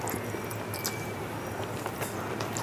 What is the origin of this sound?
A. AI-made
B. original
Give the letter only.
B